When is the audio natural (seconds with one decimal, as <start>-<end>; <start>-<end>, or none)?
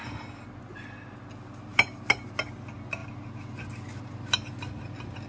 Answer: 0.0-5.3